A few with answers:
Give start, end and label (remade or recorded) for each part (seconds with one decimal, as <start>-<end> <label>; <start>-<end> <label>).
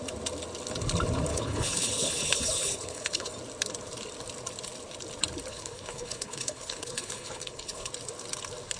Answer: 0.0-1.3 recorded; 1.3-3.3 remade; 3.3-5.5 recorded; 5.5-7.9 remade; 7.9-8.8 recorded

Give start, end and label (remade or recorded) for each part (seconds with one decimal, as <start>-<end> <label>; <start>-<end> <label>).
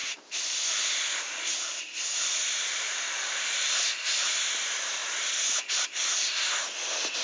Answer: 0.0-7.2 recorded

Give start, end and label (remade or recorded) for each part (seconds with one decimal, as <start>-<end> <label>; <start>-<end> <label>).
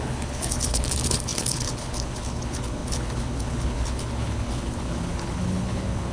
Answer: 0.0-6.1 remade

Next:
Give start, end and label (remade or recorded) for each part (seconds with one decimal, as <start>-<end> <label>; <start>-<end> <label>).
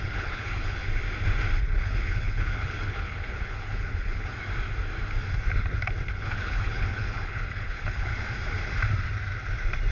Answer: 0.0-0.8 remade; 0.8-1.6 recorded; 1.6-4.3 remade; 4.3-6.1 recorded; 6.1-8.1 remade; 8.1-9.9 recorded